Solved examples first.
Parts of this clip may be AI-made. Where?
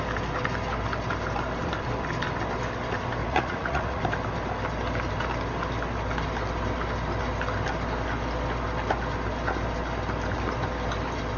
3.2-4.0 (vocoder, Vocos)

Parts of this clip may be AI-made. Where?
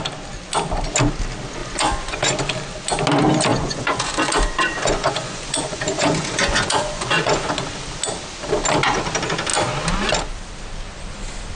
1.6-2.4 (vocoder, Vocos); 3.5-7.5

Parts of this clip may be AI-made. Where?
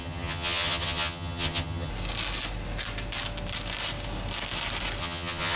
0.0-1.9 (vocoder, HiFi-GAN); 5.0-5.6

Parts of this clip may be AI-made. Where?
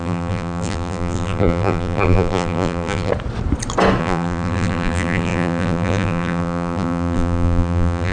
0.0-3.1 (vocoder, BigVGAN v2); 4.0-8.1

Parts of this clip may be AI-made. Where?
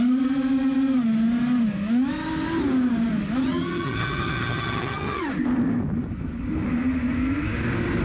3.4-5.3 (vocoder, HiFi-GAN)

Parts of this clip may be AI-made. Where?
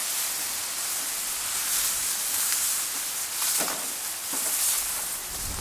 none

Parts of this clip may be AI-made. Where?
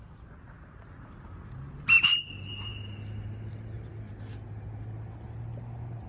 none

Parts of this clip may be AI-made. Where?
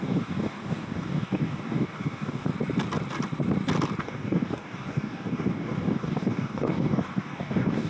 0.0-2.5 (codec, DAC); 4.0-7.9